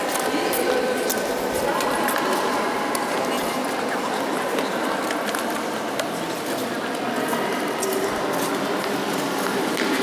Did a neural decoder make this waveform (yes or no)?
no